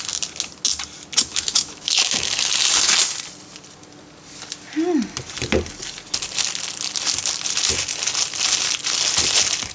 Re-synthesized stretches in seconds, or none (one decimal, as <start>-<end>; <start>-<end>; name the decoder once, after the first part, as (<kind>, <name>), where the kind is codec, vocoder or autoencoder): 1.3-2.5 (autoencoder, DAC-VAE)